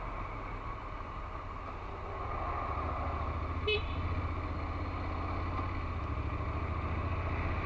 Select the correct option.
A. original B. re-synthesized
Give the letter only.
A